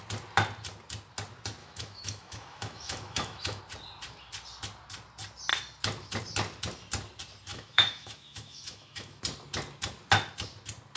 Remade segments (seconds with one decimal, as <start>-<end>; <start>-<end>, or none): 1.6-3.6; 7.5-9.2